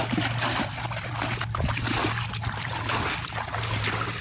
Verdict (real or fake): real